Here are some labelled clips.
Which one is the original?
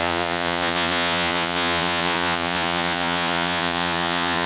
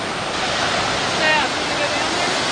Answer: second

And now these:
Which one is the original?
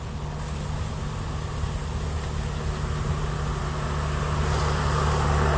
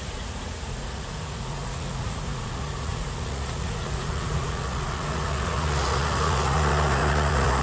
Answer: first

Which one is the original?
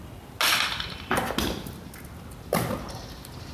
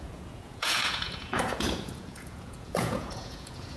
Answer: first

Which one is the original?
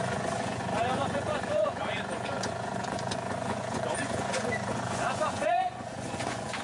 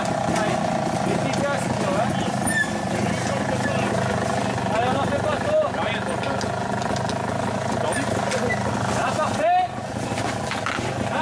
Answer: second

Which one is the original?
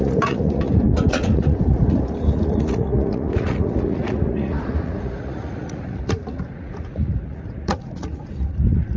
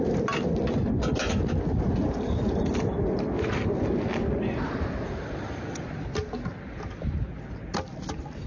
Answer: second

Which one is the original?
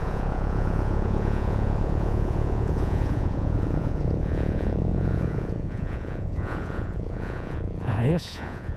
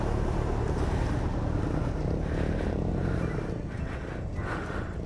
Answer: second